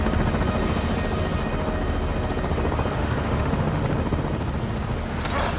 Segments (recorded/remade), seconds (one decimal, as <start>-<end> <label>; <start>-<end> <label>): 0.0-3.0 recorded; 3.0-3.8 remade; 3.8-5.6 recorded